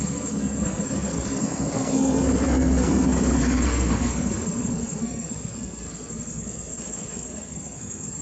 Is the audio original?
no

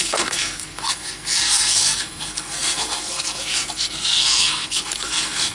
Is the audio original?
no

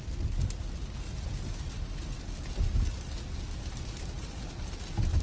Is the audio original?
yes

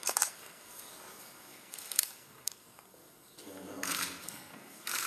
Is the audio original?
no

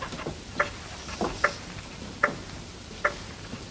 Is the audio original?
yes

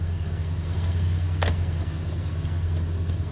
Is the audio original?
no